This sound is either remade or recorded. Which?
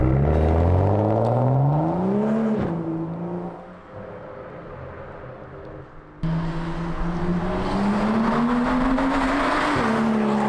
recorded